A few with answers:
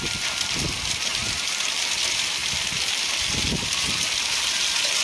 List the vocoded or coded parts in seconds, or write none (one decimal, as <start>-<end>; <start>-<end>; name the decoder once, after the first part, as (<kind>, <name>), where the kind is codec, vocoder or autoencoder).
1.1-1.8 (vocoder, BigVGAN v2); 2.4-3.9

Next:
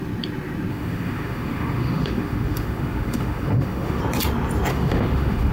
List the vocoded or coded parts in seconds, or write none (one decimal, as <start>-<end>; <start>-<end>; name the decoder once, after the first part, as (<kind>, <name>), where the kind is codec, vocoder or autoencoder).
0.7-4.0 (autoencoder, DAC-VAE); 4.7-5.5

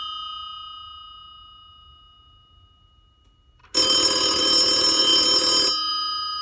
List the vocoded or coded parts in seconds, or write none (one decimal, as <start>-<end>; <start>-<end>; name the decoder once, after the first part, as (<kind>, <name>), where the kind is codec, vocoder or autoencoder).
none

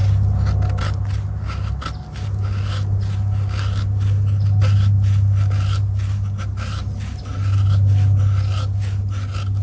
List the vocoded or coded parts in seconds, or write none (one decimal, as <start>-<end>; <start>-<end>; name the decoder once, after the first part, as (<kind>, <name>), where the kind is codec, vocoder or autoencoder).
none